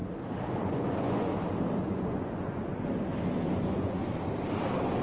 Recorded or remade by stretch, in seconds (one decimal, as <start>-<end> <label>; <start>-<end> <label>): 0.0-0.5 recorded; 0.5-1.3 remade; 1.3-1.8 recorded; 1.8-2.7 remade; 2.7-3.5 recorded; 3.5-4.0 remade; 4.0-5.0 recorded